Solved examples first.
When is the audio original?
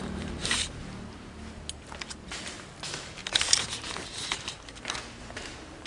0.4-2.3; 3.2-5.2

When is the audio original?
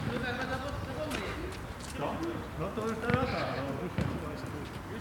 0.0-0.5; 1.1-5.0